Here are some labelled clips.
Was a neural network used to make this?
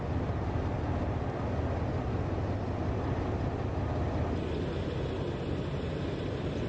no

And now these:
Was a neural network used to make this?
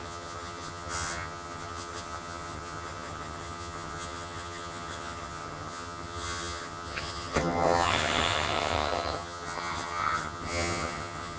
yes